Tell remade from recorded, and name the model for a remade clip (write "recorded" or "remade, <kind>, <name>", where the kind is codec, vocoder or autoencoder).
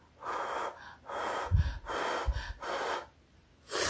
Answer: recorded